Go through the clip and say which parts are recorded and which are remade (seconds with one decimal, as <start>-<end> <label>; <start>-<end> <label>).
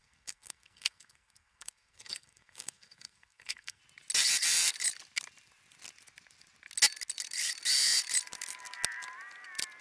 0.0-3.8 remade; 3.8-9.8 recorded